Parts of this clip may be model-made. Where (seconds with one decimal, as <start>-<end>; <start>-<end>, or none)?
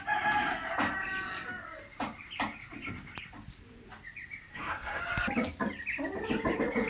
4.5-5.0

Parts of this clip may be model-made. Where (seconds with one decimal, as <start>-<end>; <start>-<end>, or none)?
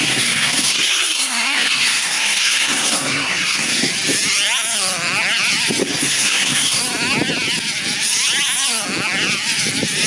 0.0-3.9; 5.8-6.8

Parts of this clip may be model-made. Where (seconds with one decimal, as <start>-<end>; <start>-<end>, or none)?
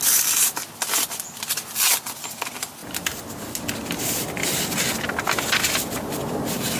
none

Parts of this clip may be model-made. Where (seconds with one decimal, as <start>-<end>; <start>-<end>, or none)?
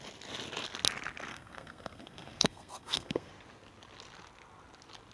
1.3-3.3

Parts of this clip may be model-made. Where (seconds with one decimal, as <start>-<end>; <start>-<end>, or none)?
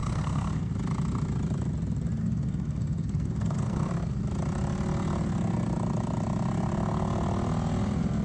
0.0-0.7; 2.2-3.9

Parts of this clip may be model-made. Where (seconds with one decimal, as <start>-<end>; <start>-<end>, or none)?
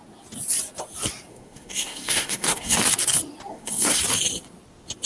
1.3-2.8; 3.5-4.0